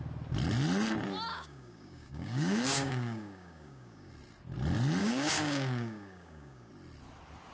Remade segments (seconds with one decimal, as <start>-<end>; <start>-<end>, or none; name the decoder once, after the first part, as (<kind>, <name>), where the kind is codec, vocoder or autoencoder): 1.3-4.1 (codec, DAC); 5.0-6.7